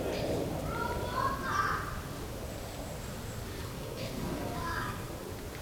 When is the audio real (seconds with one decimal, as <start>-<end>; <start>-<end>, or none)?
0.0-3.6; 5.1-5.6